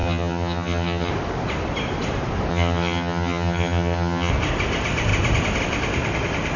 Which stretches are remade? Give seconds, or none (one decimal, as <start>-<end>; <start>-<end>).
0.0-1.1; 2.5-4.3